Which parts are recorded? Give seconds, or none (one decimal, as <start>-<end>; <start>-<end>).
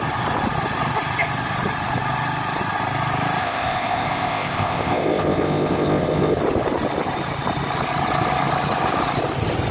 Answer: 0.0-3.4; 6.4-9.7